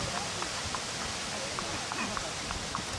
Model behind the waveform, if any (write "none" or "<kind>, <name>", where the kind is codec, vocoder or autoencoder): none